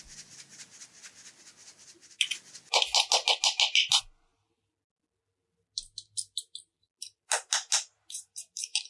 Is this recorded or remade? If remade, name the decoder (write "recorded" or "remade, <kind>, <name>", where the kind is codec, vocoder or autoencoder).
recorded